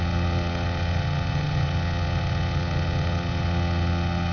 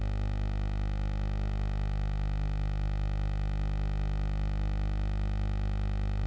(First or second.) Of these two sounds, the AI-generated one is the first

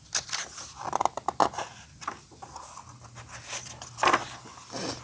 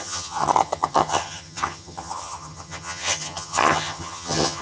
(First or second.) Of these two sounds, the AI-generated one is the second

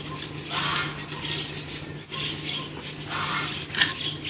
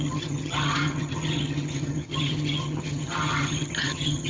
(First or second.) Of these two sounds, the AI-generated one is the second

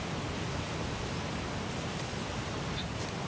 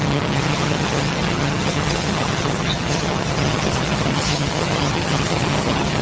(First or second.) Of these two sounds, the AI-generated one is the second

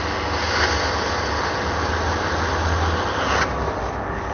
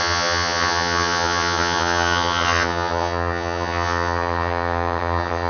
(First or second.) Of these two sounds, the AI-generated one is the second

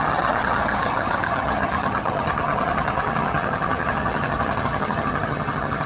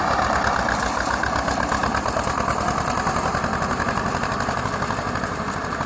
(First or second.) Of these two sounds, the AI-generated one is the first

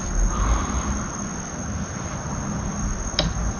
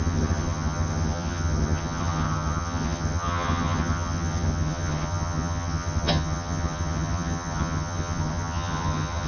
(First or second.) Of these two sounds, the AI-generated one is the second